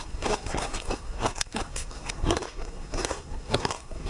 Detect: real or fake fake